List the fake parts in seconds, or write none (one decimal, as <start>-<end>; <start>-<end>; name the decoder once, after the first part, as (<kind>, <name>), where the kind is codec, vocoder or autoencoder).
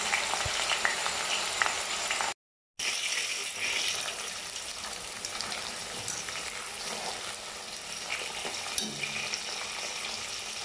none